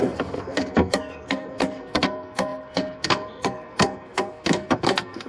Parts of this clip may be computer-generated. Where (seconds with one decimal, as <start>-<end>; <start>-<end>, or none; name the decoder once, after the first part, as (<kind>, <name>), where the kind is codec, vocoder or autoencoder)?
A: 0.0-5.3 (codec, SNAC)